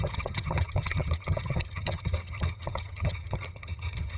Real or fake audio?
fake